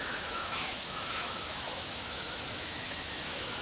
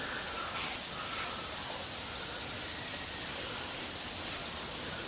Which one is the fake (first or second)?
first